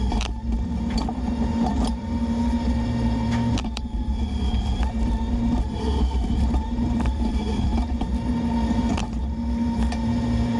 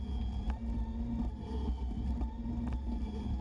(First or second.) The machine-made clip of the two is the first